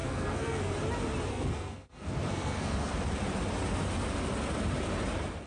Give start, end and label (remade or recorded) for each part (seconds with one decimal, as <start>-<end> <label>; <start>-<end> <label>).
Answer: 0.0-0.7 remade; 0.7-1.3 recorded; 1.3-2.9 remade; 2.9-5.5 recorded